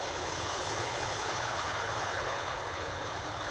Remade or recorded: remade